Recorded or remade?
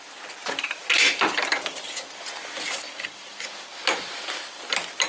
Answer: recorded